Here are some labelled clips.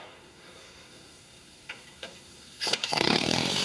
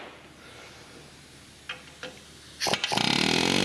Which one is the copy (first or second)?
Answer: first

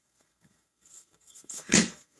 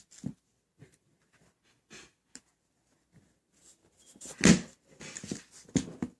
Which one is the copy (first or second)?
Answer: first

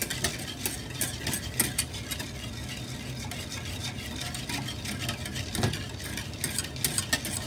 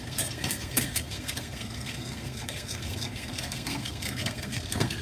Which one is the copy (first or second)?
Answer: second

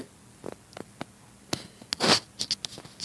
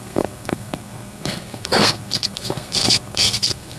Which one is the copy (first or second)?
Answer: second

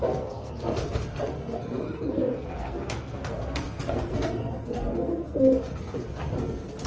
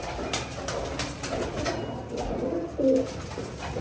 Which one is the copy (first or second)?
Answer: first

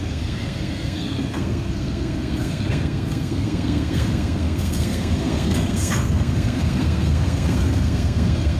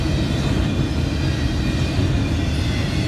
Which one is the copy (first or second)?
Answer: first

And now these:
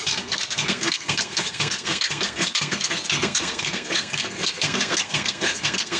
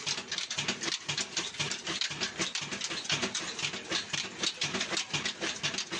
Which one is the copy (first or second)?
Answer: first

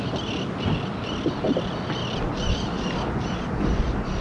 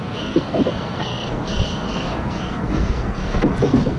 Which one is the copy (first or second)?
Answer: second